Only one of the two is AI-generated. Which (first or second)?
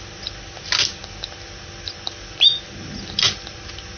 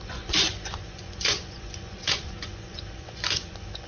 second